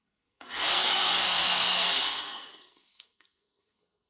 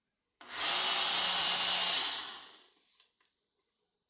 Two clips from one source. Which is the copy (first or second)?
first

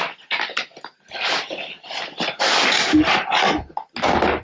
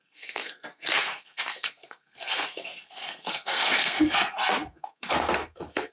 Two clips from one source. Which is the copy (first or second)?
second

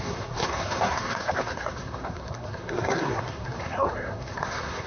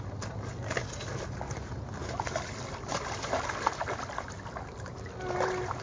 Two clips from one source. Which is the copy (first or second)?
first